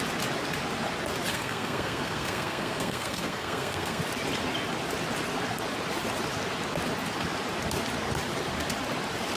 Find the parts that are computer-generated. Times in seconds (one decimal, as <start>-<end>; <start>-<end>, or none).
1.3-4.0